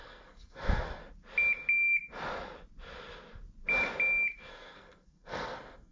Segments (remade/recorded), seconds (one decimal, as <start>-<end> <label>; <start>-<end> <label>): 0.0-1.0 remade; 1.0-4.5 recorded; 4.5-5.9 remade